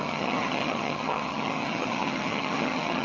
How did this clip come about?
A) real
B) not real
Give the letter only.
B